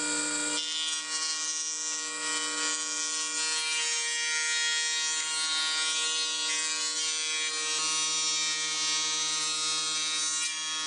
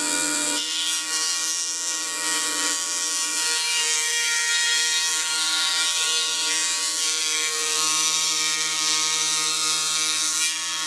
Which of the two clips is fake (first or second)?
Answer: second